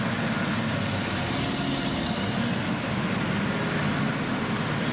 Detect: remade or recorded recorded